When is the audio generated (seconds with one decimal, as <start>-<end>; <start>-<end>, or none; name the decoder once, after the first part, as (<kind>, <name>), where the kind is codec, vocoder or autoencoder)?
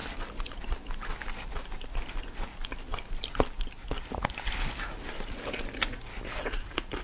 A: none